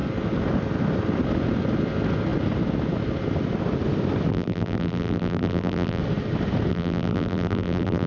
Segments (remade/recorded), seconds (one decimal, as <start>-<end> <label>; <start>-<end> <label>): 0.0-4.3 recorded; 4.3-6.0 remade; 6.0-6.7 recorded; 6.7-8.1 remade